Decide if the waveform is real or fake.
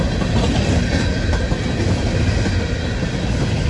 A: real